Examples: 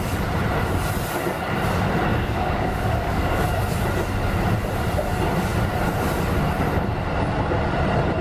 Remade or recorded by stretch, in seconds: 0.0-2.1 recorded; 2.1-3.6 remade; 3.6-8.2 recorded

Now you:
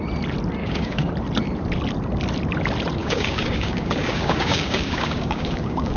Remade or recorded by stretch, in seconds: 0.0-0.6 recorded; 0.6-1.1 remade; 1.1-3.0 recorded; 3.0-6.0 remade